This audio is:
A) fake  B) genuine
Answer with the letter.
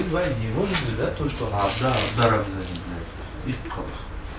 B